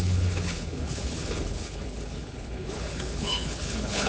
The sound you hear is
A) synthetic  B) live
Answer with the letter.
A